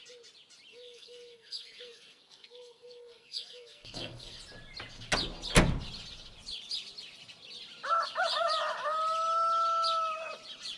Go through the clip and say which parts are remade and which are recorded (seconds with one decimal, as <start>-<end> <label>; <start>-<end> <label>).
0.0-0.7 recorded; 0.7-4.4 remade; 4.4-10.8 recorded